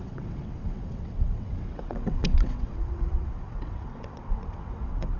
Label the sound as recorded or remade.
remade